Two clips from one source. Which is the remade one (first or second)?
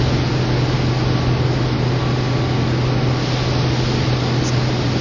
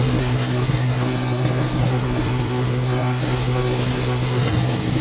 second